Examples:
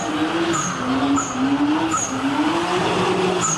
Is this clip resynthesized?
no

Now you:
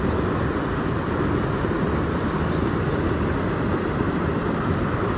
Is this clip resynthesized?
no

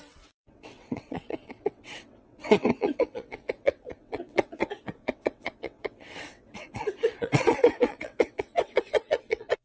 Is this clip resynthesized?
yes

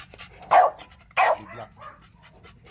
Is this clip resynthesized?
no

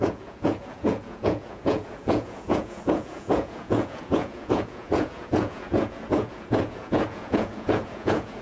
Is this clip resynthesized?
yes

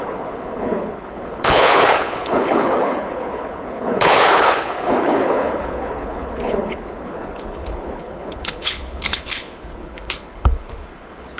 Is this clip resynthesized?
yes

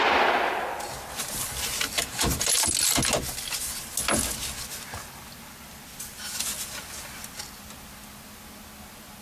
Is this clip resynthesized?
no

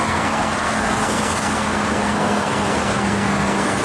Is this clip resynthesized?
yes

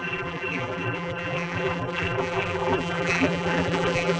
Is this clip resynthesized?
yes